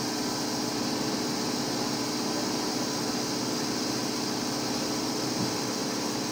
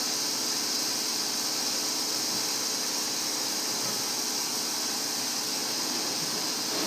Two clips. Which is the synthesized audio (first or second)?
second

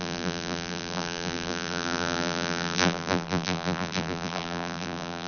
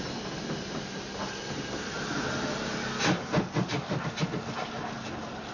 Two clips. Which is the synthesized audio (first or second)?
first